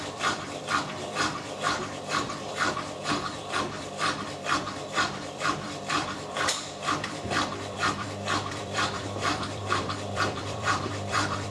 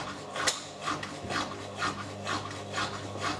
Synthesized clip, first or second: first